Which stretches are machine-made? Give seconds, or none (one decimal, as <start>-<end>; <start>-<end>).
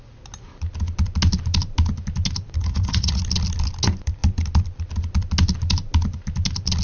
2.6-3.2